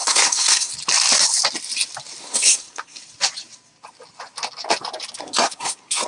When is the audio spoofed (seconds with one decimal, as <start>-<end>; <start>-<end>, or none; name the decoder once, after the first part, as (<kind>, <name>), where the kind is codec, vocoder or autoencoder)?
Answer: 0.0-0.7 (codec, SNAC); 2.2-3.0; 5.2-6.1